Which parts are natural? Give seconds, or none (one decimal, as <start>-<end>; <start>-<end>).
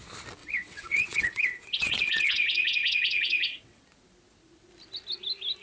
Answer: 0.0-0.4; 3.8-5.6